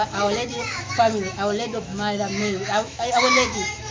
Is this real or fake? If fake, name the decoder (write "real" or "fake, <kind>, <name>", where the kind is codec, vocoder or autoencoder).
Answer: fake, autoencoder, DAC-VAE